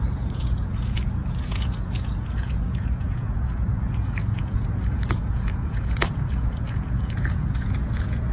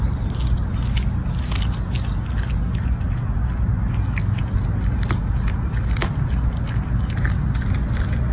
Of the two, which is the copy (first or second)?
first